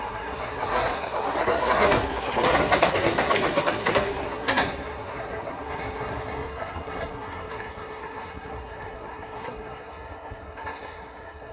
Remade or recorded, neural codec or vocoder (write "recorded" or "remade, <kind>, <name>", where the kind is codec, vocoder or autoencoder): remade, codec, SNAC